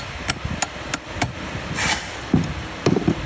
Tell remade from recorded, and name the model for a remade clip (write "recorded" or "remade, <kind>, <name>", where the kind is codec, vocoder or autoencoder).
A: recorded